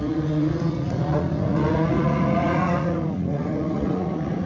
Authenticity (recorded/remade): remade